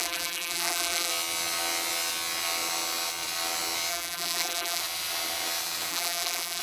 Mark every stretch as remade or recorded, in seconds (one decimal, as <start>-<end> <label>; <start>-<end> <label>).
0.0-1.1 remade; 1.1-3.9 recorded; 3.9-4.8 remade; 4.8-5.9 recorded; 5.9-6.6 remade